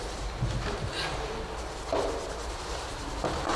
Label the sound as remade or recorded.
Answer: recorded